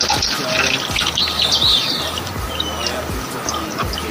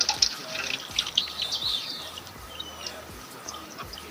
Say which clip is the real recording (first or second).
first